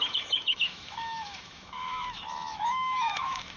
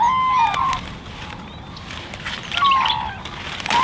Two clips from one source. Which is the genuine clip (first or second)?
second